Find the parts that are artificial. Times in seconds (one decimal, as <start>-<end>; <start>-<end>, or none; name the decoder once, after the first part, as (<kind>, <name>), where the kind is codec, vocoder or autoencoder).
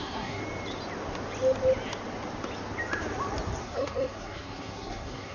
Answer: 0.0-0.4 (codec, SNAC); 3.6-5.3